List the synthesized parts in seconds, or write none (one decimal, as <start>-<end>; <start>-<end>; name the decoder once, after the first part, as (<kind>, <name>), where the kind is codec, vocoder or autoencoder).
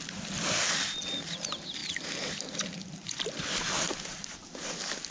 none